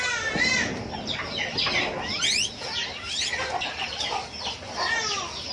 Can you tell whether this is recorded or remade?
recorded